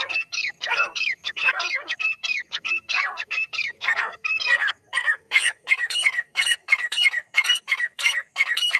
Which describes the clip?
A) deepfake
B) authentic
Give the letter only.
A